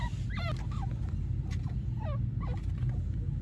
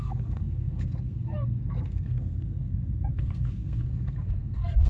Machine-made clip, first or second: second